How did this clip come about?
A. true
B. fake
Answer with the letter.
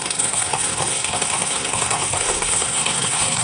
B